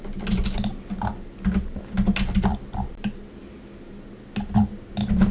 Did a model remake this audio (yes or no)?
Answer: no